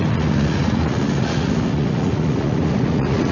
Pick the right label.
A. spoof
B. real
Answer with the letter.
A